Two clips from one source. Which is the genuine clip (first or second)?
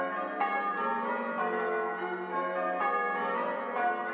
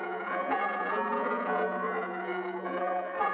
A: first